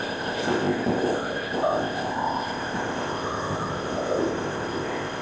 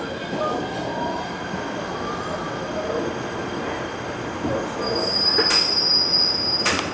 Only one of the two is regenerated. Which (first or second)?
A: first